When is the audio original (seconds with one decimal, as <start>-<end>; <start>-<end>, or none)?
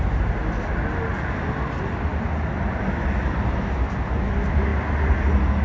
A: 0.0-5.6